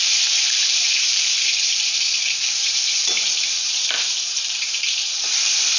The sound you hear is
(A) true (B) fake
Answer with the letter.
B